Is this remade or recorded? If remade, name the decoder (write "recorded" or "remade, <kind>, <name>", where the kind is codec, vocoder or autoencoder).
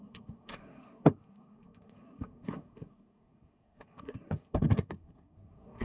remade, codec, SNAC